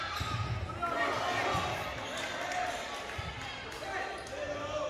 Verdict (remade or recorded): recorded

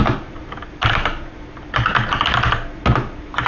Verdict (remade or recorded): recorded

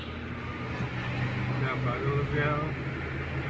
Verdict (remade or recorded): recorded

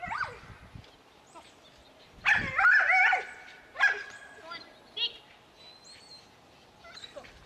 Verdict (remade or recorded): recorded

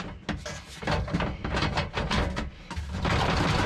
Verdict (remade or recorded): recorded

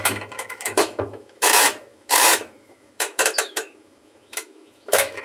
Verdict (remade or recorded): remade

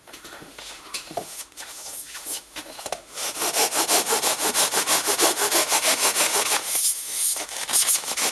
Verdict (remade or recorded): remade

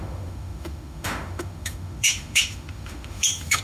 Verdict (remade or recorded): remade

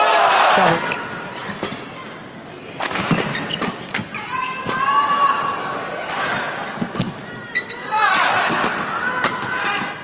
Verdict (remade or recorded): recorded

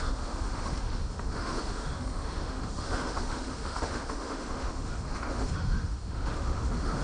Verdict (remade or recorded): remade